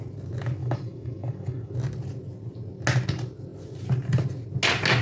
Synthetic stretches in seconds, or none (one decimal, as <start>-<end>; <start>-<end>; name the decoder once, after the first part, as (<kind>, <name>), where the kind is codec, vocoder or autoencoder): 0.6-1.7 (codec, DAC)